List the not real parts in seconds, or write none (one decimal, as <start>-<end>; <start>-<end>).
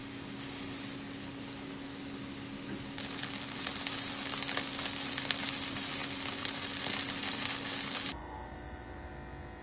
8.2-9.1